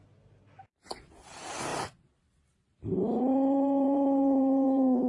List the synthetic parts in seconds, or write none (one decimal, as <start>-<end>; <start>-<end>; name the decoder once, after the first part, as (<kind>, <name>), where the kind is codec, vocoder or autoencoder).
1.7-5.1 (vocoder, BigVGAN v2)